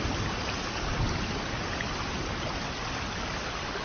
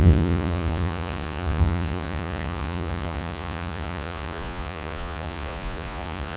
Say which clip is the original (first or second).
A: first